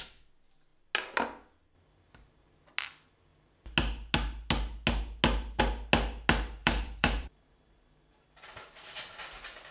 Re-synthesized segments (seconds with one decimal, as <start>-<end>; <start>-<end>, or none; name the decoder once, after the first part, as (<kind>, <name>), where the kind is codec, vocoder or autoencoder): 6.6-7.8 (vocoder, BigVGAN v2)

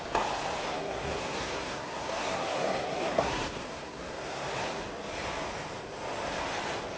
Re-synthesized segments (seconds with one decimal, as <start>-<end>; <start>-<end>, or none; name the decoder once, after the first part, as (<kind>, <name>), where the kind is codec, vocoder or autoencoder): 0.6-4.8 (codec, SNAC)

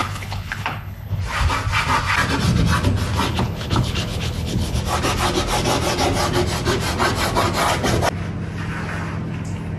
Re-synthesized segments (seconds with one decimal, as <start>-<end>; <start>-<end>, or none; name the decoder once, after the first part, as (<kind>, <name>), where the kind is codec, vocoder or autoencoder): 0.0-1.2 (codec, HILCodec); 3.3-4.8

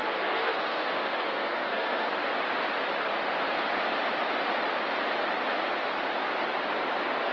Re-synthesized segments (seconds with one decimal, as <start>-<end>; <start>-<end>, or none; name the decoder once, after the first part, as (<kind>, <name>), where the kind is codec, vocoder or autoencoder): 0.0-2.1 (codec, SNAC)

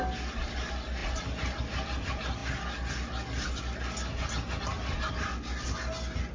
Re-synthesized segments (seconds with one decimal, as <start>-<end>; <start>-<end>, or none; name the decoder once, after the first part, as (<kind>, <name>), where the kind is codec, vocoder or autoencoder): none

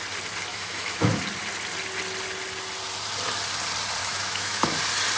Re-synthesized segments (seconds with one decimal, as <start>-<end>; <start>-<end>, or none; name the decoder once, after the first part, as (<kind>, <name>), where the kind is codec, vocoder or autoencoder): 0.5-1.2 (autoencoder, DAC-VAE); 4.0-4.8